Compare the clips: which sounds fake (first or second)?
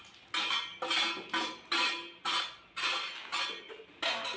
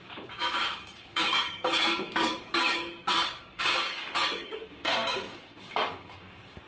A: second